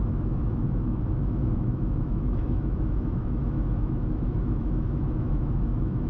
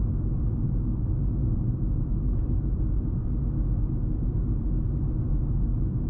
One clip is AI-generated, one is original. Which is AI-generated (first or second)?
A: first